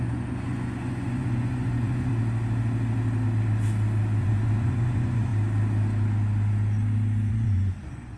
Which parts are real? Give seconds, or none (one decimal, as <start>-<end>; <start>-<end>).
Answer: 2.1-4.2; 5.3-7.3